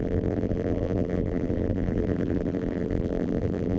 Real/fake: fake